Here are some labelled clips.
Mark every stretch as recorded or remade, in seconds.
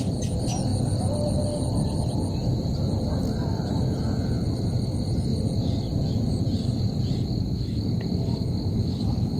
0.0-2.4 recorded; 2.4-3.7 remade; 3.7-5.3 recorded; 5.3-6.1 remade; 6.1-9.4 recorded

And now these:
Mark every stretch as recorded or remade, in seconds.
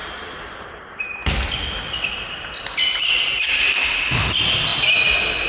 0.0-3.3 remade; 3.3-5.5 recorded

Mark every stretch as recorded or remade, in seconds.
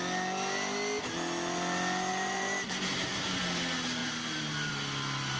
0.0-2.1 recorded; 2.1-3.4 remade; 3.4-4.0 recorded; 4.0-4.7 remade; 4.7-5.4 recorded